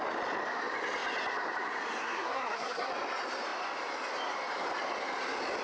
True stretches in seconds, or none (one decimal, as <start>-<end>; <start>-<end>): 0.0-2.0; 2.9-5.6